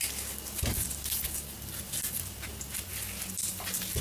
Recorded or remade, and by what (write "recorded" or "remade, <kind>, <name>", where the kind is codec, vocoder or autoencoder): recorded